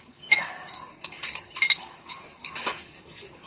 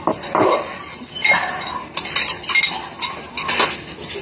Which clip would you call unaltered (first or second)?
second